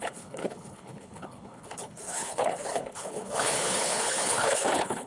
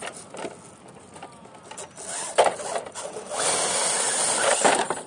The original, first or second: second